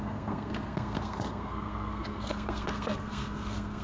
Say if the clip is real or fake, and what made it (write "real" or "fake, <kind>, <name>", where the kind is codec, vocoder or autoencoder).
fake, codec, SNAC